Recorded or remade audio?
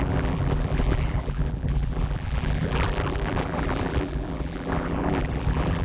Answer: remade